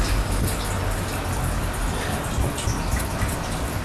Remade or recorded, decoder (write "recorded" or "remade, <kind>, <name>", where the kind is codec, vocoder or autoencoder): recorded